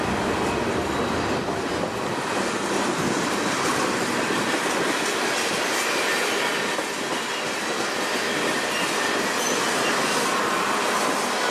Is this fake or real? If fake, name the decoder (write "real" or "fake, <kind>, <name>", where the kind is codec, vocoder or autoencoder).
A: real